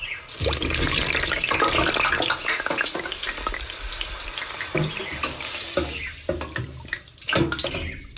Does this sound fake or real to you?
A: real